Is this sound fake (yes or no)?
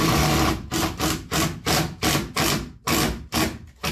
no